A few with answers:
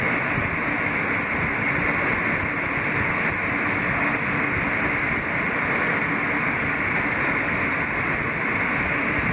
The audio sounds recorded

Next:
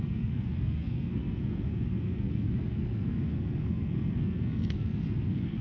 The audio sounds remade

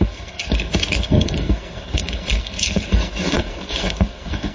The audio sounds remade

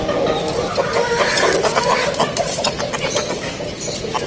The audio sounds recorded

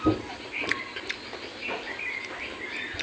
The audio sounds recorded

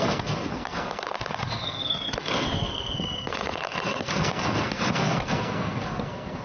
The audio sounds remade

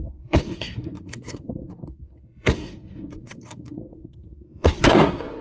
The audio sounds remade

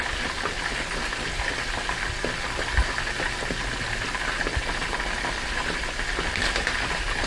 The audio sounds recorded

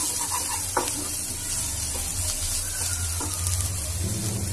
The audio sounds recorded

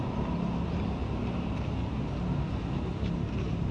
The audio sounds recorded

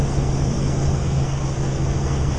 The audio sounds remade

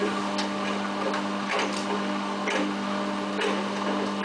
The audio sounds recorded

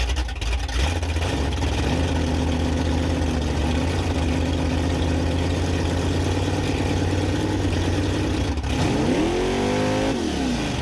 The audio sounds recorded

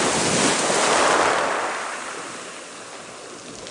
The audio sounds recorded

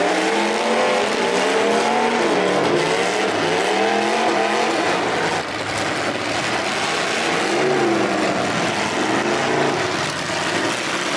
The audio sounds recorded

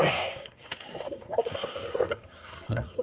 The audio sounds remade